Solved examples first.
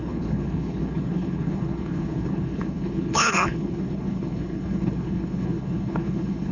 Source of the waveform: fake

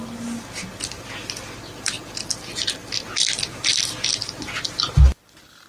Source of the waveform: real